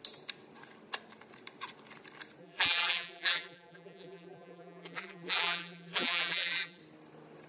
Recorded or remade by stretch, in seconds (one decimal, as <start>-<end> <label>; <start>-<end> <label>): 0.0-2.4 recorded; 2.4-6.8 remade; 6.8-7.5 recorded